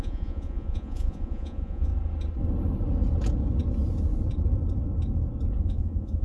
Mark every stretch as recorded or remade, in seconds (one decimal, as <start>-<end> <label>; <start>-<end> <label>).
0.0-1.9 remade; 1.9-5.6 recorded; 5.6-6.2 remade